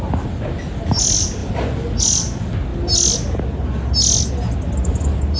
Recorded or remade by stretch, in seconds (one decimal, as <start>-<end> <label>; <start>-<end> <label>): 0.0-5.4 recorded